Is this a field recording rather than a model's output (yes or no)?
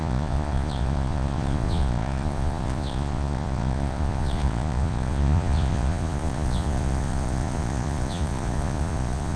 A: no